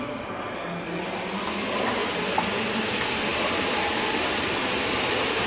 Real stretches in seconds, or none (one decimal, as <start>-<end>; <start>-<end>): 0.0-5.5